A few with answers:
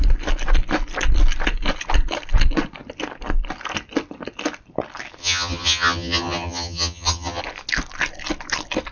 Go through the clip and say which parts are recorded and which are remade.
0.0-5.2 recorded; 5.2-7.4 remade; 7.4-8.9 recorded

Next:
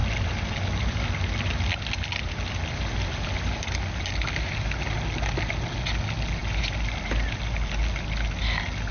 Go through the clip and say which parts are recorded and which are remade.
0.0-8.9 recorded

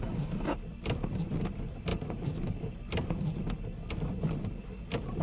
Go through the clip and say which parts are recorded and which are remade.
0.0-5.2 recorded

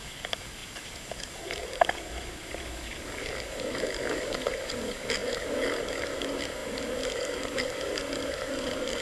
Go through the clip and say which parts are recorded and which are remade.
0.0-9.0 remade

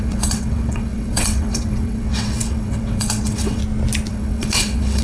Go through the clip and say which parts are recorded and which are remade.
0.0-3.6 remade; 3.6-4.1 recorded; 4.1-5.0 remade

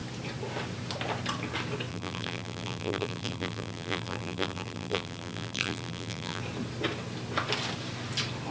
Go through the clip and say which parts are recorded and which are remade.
0.0-1.9 recorded; 1.9-6.4 remade; 6.4-8.5 recorded

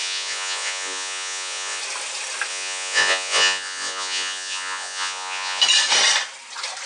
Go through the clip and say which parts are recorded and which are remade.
0.0-1.8 remade; 1.8-2.5 recorded; 2.5-5.6 remade; 5.6-6.9 recorded